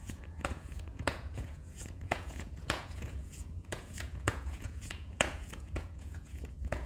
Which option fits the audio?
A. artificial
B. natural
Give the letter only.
A